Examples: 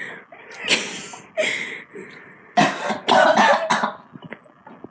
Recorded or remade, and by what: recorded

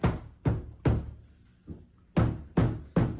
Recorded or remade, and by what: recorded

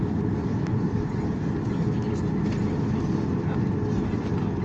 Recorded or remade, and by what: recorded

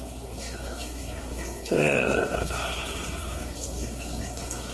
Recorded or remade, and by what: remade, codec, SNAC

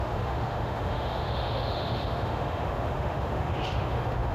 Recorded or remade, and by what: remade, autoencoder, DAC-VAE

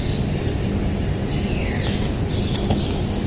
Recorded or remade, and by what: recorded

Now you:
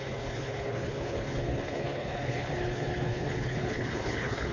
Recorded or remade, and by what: remade, codec, HILCodec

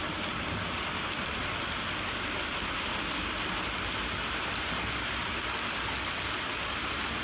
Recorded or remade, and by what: recorded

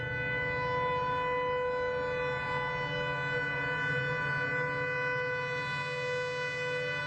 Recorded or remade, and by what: recorded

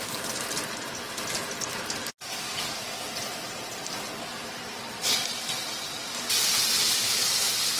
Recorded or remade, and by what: recorded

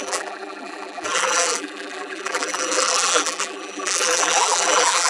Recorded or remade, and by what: remade, vocoder, BigVGAN v2